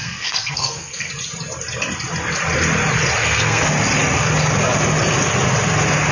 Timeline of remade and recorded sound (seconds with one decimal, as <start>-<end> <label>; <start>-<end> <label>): 0.0-1.1 remade; 1.1-3.2 recorded; 3.2-3.7 remade; 3.7-6.1 recorded